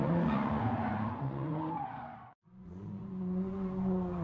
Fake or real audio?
fake